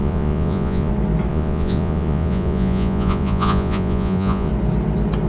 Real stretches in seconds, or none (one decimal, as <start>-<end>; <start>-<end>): 0.9-1.3; 4.5-5.3